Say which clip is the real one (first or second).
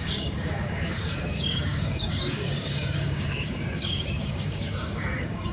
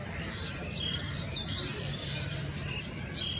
second